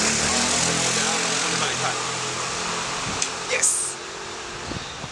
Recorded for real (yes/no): yes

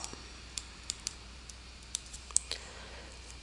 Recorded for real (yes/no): no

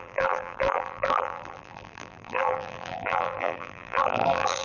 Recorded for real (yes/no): no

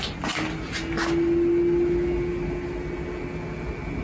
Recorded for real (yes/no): yes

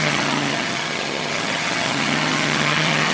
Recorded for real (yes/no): no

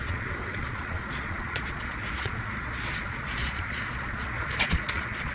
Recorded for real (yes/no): no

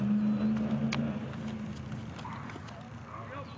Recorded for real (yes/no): yes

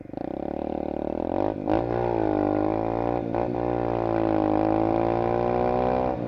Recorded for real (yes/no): yes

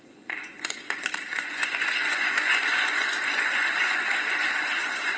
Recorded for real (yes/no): no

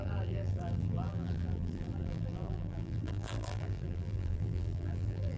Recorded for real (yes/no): no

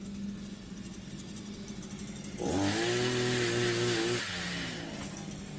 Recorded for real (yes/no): yes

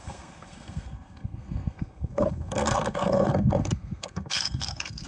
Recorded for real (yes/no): no